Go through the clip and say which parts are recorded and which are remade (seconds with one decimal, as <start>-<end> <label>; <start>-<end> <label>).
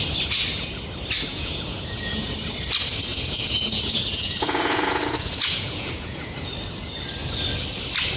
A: 0.0-1.3 recorded; 1.3-2.3 remade; 2.3-3.1 recorded; 3.1-6.5 remade; 6.5-8.2 recorded